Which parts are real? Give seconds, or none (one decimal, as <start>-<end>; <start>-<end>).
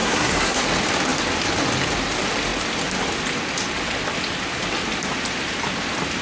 0.6-6.2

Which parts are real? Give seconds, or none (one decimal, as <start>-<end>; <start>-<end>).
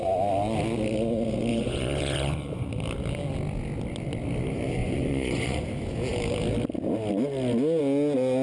0.0-1.5; 2.7-4.8; 5.6-8.4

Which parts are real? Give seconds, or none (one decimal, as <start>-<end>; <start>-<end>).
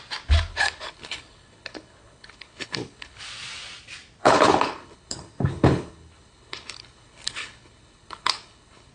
0.0-0.5; 3.2-4.2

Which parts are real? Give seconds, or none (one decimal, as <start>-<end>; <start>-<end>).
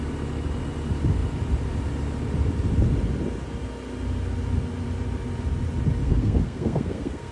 0.0-6.0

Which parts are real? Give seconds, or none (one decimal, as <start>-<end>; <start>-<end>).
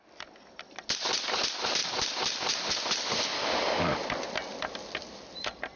0.0-5.8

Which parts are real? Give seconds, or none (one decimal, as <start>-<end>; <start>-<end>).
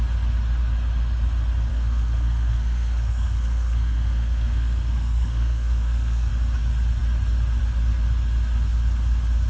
0.0-1.7; 6.3-9.5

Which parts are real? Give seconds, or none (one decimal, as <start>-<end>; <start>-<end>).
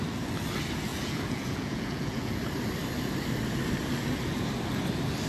0.0-0.9; 2.4-5.3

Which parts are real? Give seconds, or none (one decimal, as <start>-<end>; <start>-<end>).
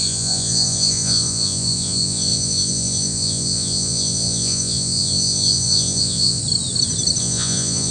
6.4-7.2